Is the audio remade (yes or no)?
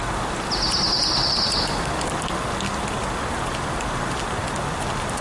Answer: no